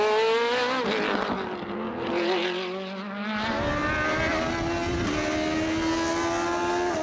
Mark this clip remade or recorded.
recorded